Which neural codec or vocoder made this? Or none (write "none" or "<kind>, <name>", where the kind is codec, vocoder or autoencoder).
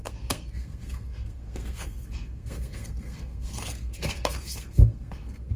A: codec, SNAC